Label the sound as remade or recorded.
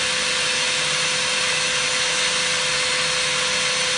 recorded